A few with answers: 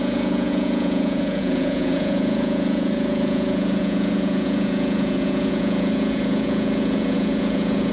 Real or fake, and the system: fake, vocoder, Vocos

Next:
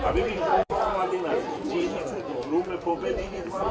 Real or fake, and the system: fake, vocoder, Vocos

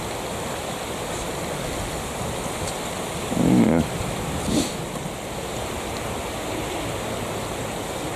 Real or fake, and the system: real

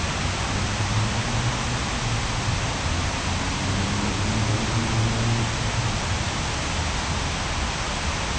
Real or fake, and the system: real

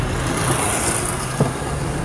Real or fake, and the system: real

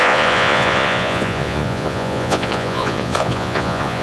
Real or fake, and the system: fake, vocoder, Vocos